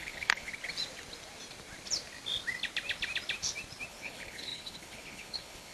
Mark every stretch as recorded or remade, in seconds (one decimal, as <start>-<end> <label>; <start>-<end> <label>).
0.0-0.5 remade; 0.5-3.9 recorded; 3.9-5.7 remade